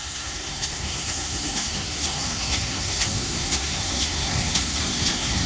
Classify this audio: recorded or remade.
remade